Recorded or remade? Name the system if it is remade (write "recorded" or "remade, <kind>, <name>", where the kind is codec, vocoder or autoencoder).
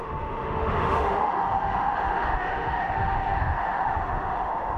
remade, autoencoder, DAC-VAE